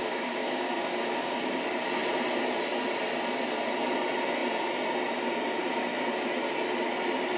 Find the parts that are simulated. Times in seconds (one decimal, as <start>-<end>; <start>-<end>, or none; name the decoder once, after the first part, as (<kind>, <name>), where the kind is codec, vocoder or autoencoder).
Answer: 0.0-1.6 (codec, DAC)